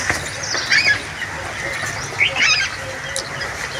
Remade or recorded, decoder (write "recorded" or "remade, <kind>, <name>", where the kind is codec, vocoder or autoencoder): recorded